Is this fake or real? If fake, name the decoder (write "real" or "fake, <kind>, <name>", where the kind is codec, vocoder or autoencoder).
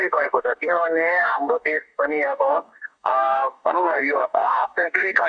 fake, codec, DAC